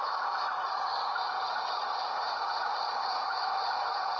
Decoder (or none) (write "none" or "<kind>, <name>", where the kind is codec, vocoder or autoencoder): vocoder, Vocos